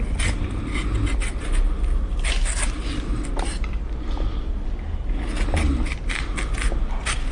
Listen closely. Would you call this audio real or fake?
real